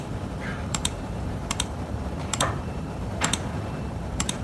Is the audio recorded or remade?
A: remade